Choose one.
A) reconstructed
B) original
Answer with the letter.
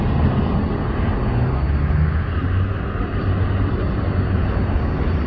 B